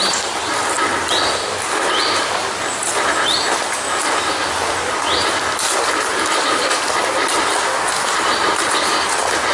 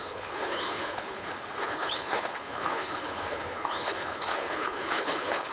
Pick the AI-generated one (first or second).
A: second